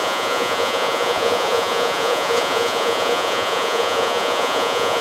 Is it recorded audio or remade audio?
remade